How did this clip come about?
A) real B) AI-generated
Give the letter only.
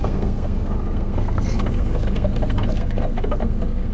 B